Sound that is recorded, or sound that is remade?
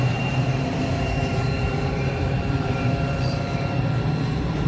remade